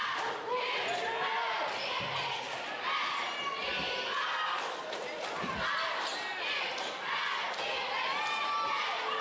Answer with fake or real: real